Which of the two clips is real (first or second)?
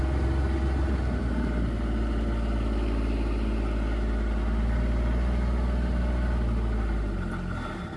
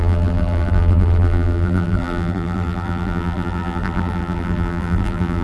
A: first